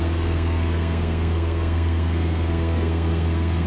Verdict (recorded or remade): remade